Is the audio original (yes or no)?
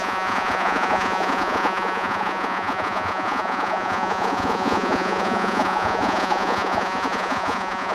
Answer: no